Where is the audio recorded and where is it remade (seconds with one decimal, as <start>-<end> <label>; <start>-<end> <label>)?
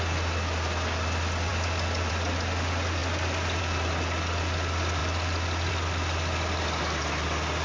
0.0-7.6 recorded